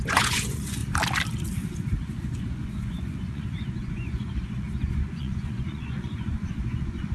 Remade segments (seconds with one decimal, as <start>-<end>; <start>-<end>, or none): 0.0-0.8; 2.4-7.1